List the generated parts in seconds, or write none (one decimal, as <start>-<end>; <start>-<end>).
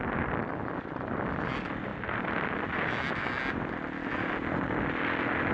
none